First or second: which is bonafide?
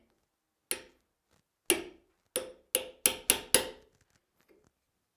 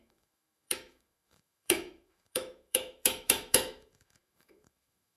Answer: first